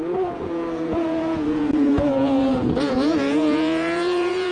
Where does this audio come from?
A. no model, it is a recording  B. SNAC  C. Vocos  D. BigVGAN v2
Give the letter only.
C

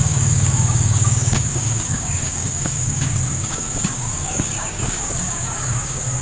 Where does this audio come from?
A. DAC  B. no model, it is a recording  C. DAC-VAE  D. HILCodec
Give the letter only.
A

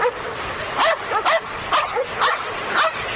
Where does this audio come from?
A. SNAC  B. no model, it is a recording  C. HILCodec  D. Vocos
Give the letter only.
B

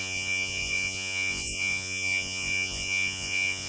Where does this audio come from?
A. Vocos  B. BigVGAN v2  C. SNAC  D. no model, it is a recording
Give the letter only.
A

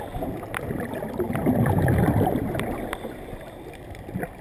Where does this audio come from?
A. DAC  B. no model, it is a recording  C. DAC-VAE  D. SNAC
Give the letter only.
B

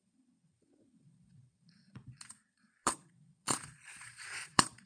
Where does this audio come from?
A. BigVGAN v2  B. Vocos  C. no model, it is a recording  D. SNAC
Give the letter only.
B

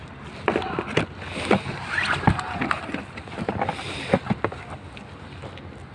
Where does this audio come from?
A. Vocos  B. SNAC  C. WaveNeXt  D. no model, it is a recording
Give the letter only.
D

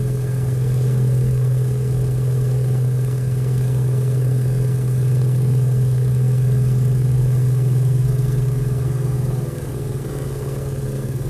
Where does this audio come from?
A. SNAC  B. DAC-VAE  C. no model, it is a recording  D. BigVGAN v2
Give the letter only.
A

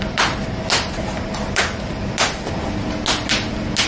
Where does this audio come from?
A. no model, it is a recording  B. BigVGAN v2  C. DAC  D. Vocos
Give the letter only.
A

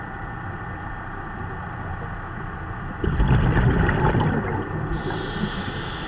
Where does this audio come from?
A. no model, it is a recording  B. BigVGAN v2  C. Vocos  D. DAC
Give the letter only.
A